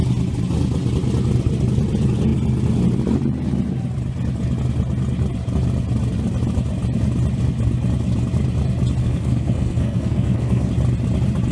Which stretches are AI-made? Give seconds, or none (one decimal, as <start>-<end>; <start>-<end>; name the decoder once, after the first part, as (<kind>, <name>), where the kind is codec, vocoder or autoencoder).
9.0-10.7 (codec, SNAC)